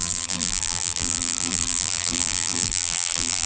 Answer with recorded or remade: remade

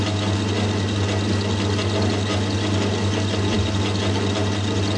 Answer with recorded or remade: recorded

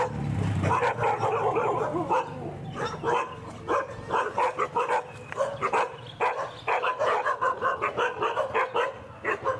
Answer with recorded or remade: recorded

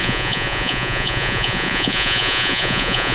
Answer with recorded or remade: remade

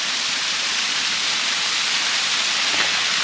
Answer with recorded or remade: recorded